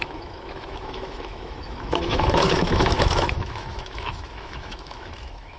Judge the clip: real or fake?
fake